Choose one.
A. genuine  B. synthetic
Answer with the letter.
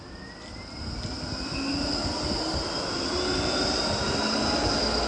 A